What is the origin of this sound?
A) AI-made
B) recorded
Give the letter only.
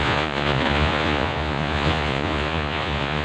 A